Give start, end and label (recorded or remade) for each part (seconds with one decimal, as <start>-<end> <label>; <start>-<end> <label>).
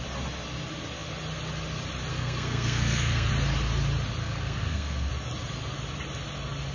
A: 0.0-2.1 recorded; 2.1-3.3 remade; 3.3-4.2 recorded; 4.2-5.1 remade; 5.1-6.7 recorded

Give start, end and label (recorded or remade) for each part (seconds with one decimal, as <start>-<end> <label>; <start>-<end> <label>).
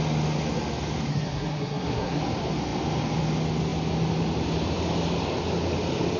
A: 0.0-1.1 recorded; 1.1-2.2 remade; 2.2-6.2 recorded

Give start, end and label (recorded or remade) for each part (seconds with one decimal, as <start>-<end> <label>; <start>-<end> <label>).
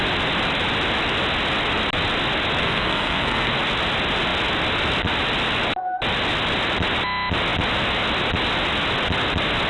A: 0.0-2.6 recorded; 2.6-3.5 remade; 3.5-9.7 recorded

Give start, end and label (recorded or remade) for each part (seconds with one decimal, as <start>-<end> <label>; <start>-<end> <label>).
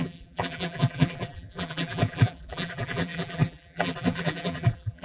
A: 0.0-5.0 remade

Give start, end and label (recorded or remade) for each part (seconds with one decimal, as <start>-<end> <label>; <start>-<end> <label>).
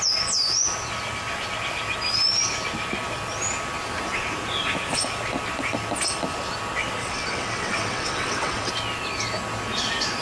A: 0.0-7.0 recorded; 7.0-8.7 remade; 8.7-10.2 recorded